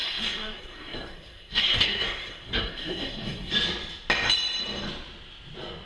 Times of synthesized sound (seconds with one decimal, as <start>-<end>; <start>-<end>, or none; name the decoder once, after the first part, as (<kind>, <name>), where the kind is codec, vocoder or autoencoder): 0.0-3.5 (codec, SNAC)